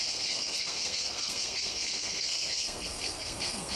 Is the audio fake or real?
fake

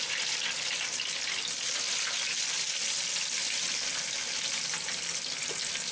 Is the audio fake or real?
real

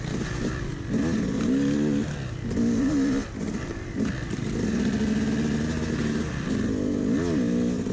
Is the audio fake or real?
real